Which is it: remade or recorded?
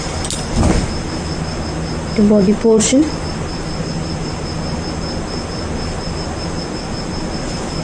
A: recorded